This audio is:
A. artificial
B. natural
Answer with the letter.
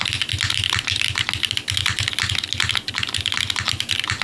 B